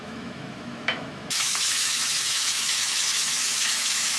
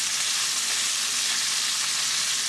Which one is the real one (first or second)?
second